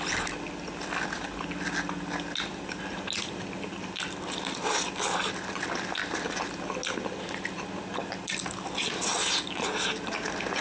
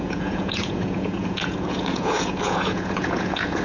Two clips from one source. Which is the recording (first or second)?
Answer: first